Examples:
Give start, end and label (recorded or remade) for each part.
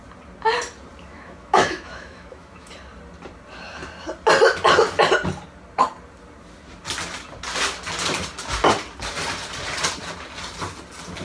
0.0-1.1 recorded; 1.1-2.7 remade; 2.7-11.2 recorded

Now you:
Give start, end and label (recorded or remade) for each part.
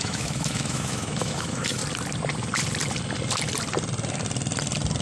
0.0-1.8 remade; 1.8-5.0 recorded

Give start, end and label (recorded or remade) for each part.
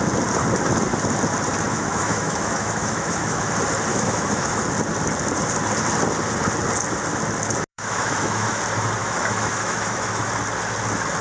0.0-1.7 recorded; 1.7-3.5 remade; 3.5-3.9 recorded; 3.9-4.6 remade; 4.6-7.7 recorded; 7.7-8.6 remade; 8.6-9.0 recorded; 9.0-10.3 remade; 10.3-11.2 recorded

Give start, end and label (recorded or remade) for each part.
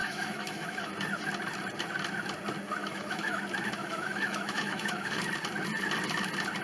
0.0-0.9 remade; 0.9-2.8 recorded; 2.8-3.4 remade; 3.4-3.8 recorded; 3.8-5.2 remade; 5.2-6.6 recorded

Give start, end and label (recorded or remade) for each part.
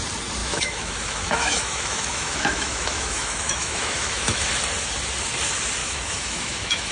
0.0-0.4 recorded; 0.4-4.5 remade; 4.5-5.8 recorded; 5.8-6.9 remade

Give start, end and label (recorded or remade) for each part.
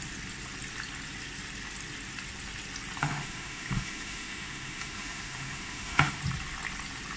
0.0-3.0 recorded; 3.0-6.2 remade; 6.2-7.2 recorded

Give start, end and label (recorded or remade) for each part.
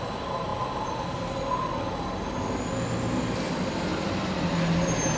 0.0-5.2 recorded